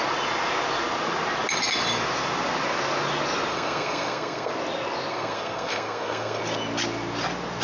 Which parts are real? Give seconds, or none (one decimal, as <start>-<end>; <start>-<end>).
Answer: 0.0-3.5; 4.5-5.1; 6.4-7.6